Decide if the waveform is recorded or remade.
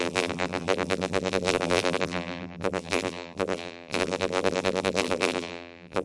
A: remade